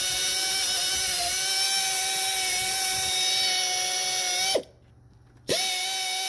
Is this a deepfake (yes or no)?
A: no